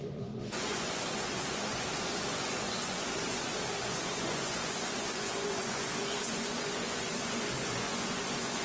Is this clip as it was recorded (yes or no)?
no